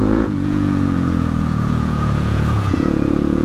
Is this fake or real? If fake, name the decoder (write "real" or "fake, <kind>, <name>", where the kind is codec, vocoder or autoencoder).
fake, vocoder, Vocos